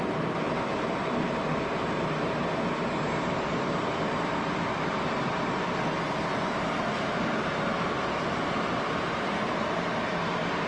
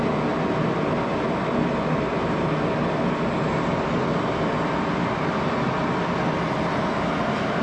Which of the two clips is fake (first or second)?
first